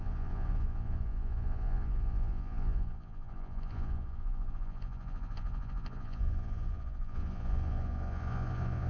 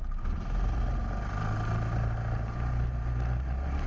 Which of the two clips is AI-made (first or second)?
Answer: first